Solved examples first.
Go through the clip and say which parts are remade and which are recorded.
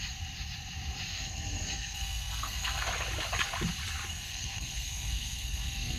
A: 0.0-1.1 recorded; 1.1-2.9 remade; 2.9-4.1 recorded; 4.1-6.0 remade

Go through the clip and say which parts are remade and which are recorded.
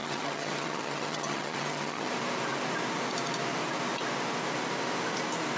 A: 0.0-2.1 remade; 2.1-5.6 recorded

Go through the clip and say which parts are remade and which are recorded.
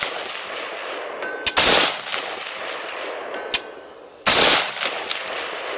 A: 0.0-5.8 recorded